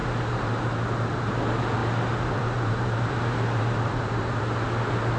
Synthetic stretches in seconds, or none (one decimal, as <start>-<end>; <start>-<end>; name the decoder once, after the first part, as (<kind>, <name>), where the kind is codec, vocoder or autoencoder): 0.0-0.6 (vocoder, BigVGAN v2); 1.8-4.4

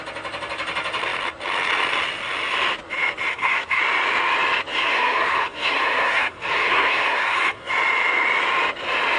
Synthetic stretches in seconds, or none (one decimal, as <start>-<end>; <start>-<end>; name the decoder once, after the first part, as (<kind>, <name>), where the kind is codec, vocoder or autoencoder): 3.3-3.8 (codec, SNAC); 4.7-7.7

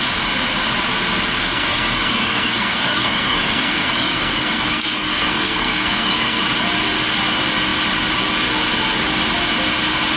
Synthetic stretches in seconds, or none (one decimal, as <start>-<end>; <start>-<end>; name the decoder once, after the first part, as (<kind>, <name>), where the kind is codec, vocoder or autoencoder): 1.4-6.4 (codec, SNAC)

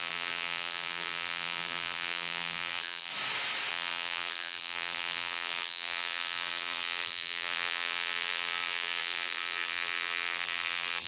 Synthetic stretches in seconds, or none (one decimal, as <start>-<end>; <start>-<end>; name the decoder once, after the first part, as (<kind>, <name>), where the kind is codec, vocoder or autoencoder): 0.0-3.1 (vocoder, BigVGAN v2); 3.7-11.1

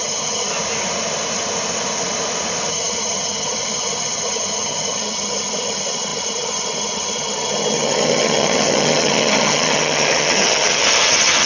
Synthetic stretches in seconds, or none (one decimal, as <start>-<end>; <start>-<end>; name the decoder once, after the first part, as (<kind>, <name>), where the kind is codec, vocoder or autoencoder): 0.0-0.5 (vocoder, HiFi-GAN); 2.7-11.5

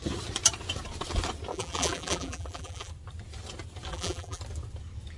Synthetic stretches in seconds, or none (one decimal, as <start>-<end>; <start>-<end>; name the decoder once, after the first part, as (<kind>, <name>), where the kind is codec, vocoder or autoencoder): 1.5-2.9 (vocoder, BigVGAN v2); 3.9-4.4

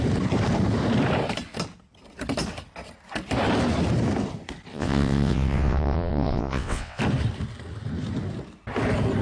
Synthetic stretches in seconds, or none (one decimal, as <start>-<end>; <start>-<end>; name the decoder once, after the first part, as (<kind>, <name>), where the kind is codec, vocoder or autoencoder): 4.7-7.0 (vocoder, WaveNeXt)